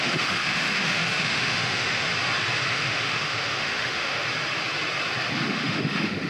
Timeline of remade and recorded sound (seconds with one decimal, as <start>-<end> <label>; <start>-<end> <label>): 0.0-2.1 remade; 2.1-2.7 recorded; 2.7-4.2 remade; 4.2-5.4 recorded; 5.4-6.3 remade